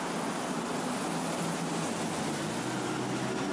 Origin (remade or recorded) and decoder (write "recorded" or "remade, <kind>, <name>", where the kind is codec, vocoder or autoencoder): recorded